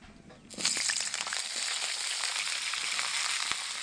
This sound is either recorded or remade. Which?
recorded